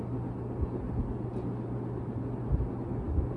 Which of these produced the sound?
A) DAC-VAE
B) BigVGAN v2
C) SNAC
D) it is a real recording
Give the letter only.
D